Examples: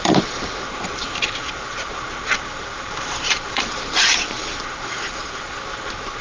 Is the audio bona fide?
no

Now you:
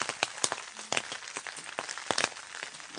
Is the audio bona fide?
yes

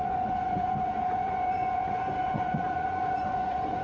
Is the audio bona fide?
no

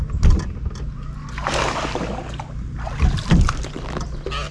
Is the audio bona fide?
yes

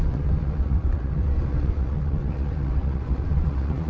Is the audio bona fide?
no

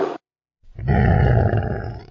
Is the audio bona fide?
no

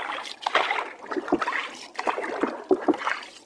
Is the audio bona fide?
yes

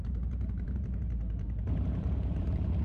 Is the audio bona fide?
no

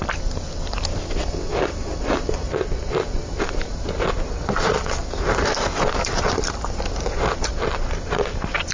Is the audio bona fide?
yes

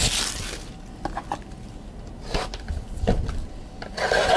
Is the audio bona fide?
yes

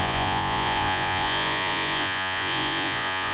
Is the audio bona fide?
no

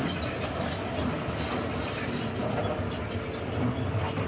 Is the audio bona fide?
yes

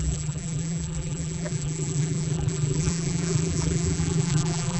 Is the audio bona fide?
no